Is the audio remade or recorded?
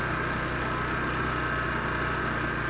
recorded